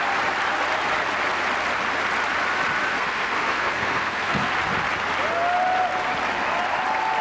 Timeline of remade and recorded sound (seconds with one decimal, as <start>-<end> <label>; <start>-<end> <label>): 0.0-2.9 recorded; 2.9-4.5 remade; 4.5-7.2 recorded